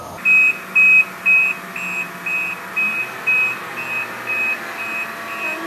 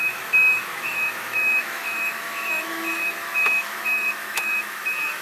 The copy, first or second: second